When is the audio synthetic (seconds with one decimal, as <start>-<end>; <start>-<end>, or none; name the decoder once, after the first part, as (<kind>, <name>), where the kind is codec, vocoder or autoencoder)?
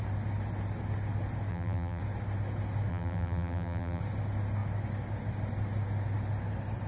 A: 1.5-2.0 (vocoder, BigVGAN v2); 2.9-4.0